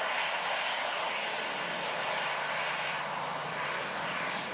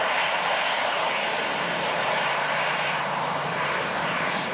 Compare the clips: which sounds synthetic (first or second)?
second